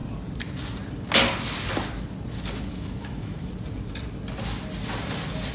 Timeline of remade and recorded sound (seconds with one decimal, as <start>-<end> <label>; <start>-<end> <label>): 0.0-2.7 recorded; 2.7-3.5 remade; 3.5-5.5 recorded

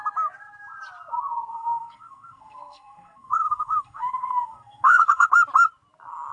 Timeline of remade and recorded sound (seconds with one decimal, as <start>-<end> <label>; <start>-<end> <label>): 0.0-1.5 recorded; 1.5-5.3 remade; 5.3-6.3 recorded

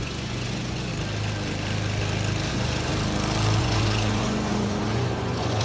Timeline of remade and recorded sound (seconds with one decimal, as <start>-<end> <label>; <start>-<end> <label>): 0.0-0.9 remade; 0.9-2.5 recorded; 2.5-2.9 remade; 2.9-3.6 recorded; 3.6-5.6 remade

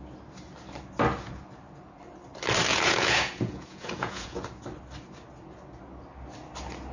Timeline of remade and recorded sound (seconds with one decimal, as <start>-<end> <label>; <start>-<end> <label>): 0.0-2.7 recorded; 2.7-4.4 remade; 4.4-6.9 recorded

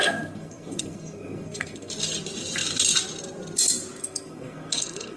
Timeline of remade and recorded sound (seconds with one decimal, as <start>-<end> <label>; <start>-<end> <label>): 0.0-1.9 remade; 1.9-4.0 recorded; 4.0-5.2 remade

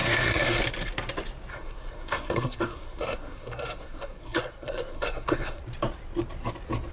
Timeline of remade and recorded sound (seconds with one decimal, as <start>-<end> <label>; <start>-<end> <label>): 0.0-0.6 remade; 0.6-1.5 recorded; 1.5-5.6 remade; 5.6-6.9 recorded

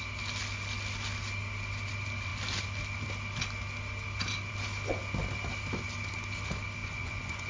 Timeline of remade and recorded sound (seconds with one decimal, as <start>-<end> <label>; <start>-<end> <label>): 0.0-6.8 recorded; 6.8-7.5 remade

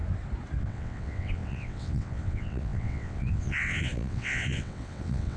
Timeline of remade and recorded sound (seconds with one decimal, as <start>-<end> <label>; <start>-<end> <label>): 0.0-0.6 recorded; 0.6-5.4 remade